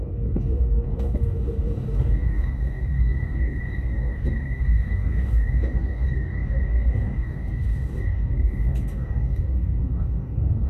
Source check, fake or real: fake